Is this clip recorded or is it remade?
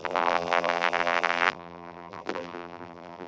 remade